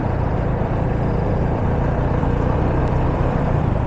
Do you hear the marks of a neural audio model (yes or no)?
yes